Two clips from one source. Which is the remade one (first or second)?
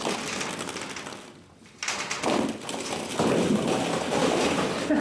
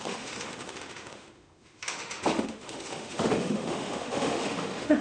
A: second